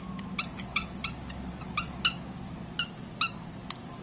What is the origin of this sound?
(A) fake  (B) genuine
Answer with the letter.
B